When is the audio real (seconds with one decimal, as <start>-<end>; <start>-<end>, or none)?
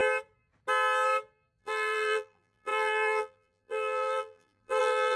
0.0-1.6